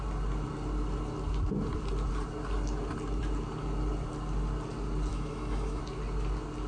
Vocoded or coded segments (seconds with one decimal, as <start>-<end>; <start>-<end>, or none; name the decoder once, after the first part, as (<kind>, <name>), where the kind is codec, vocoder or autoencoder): 5.1-5.8 (autoencoder, DAC-VAE)